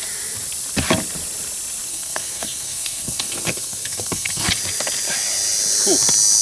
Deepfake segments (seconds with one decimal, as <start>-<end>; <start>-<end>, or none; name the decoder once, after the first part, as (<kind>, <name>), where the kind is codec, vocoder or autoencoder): 1.9-4.5 (codec, SNAC)